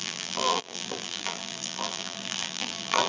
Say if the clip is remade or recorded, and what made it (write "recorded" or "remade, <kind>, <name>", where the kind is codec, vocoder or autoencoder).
remade, vocoder, BigVGAN v2